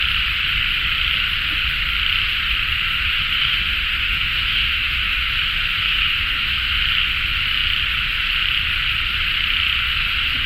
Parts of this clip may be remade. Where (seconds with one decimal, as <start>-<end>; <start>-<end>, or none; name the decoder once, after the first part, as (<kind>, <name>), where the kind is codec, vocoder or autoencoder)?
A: 2.9-5.3 (autoencoder, DAC-VAE); 5.7-6.8